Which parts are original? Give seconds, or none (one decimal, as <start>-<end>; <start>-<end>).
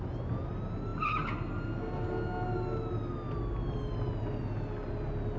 0.0-5.4